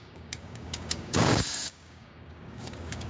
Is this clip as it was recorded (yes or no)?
no